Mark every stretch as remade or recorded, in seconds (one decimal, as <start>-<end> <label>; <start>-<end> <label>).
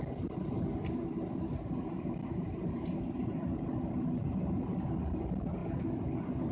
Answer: 0.0-2.2 recorded; 2.2-3.4 remade; 3.4-5.6 recorded; 5.6-6.1 remade; 6.1-6.5 recorded